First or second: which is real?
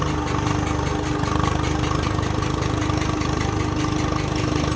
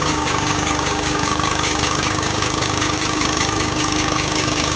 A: first